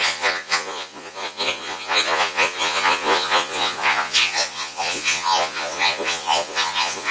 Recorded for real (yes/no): no